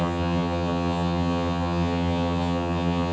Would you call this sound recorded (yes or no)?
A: no